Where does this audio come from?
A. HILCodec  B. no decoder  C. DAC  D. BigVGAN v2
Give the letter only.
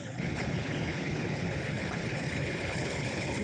A